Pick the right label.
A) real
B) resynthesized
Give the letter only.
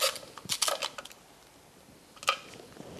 A